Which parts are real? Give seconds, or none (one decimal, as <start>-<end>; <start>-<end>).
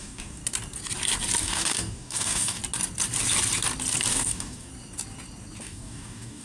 0.4-1.4; 2.6-4.1; 4.7-5.6